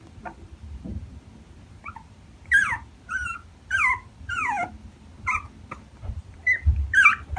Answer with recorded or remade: remade